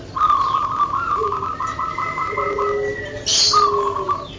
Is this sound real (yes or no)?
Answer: yes